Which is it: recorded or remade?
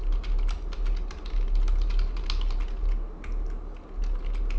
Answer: recorded